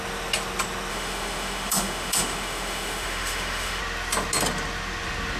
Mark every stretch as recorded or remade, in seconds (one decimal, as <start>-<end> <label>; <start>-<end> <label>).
0.0-0.9 recorded; 0.9-3.8 remade; 3.8-5.4 recorded

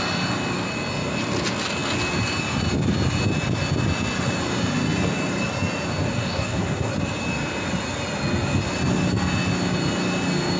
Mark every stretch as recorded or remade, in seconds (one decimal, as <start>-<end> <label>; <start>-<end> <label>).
0.0-6.2 recorded; 6.2-6.9 remade; 6.9-10.6 recorded

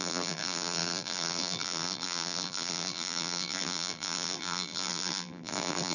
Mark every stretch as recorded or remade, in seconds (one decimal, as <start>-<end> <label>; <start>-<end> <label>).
0.0-5.9 remade

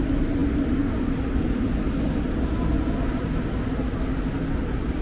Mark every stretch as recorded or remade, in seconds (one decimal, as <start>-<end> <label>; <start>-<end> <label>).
0.0-5.0 recorded

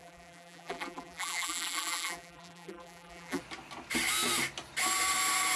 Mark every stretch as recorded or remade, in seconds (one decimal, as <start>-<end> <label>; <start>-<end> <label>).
0.0-3.4 remade; 3.4-5.6 recorded

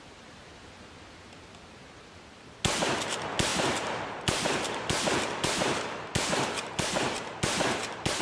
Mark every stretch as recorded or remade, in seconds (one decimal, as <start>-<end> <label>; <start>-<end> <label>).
0.0-3.5 recorded; 3.5-8.2 remade

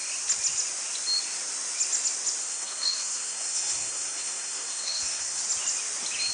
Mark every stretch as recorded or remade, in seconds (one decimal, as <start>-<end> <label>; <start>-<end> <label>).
0.0-2.4 recorded; 2.4-5.4 remade; 5.4-6.3 recorded